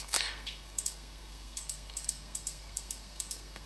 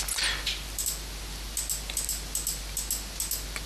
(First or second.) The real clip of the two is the second